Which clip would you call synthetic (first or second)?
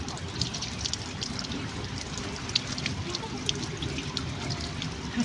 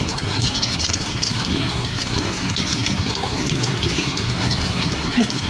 second